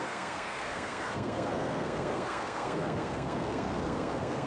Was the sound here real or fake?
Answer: fake